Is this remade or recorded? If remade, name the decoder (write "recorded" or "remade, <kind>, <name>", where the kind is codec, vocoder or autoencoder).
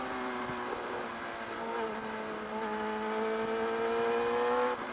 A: recorded